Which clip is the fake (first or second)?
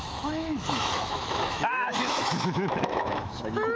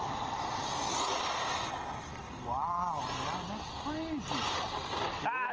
first